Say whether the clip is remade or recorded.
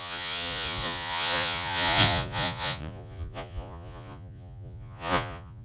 remade